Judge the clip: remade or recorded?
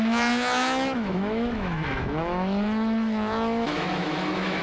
remade